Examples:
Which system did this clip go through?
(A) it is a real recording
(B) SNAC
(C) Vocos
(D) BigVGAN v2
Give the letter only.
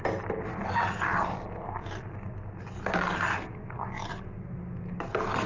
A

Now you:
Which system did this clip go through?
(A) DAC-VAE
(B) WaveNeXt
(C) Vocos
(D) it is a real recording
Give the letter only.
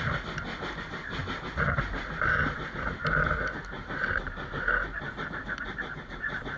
D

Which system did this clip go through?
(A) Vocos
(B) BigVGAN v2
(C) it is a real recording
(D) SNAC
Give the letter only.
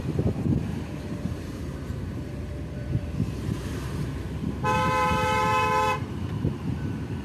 B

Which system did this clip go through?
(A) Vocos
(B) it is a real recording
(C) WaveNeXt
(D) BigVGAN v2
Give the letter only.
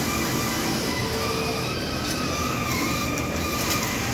B